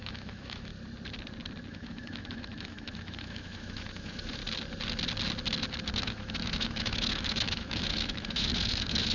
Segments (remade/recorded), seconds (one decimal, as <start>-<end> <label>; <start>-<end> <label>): 0.0-0.7 remade; 0.7-1.7 recorded; 1.7-4.4 remade; 4.4-6.0 recorded; 6.0-9.1 remade